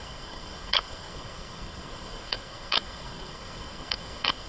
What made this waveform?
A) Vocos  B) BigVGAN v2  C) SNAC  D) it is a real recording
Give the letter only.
C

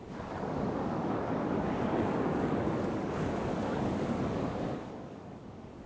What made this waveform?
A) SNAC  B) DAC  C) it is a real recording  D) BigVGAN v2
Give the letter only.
B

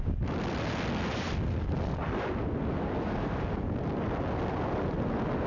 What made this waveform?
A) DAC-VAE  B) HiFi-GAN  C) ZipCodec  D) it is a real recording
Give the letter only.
D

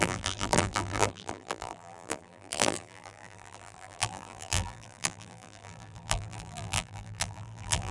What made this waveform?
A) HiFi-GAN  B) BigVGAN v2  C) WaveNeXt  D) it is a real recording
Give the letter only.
B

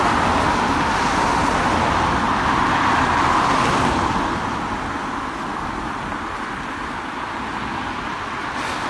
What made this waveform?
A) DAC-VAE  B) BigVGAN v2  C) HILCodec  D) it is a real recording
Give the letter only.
D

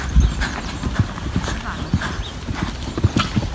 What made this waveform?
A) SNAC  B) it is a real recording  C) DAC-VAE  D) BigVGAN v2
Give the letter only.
B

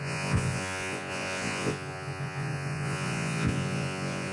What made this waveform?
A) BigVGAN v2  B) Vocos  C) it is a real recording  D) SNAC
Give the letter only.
B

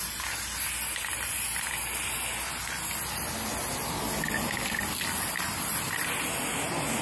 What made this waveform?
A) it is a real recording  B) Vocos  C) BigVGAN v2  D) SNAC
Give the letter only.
A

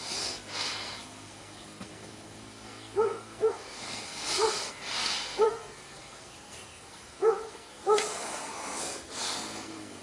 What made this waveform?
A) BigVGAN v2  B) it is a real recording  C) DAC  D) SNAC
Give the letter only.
D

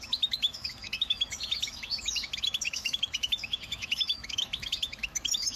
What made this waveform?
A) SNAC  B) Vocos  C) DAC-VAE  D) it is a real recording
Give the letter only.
C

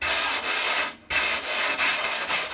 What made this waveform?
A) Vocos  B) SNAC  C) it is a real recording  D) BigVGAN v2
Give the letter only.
C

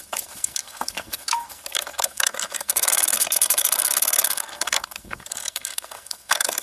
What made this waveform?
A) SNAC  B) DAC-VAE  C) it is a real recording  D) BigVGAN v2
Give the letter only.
A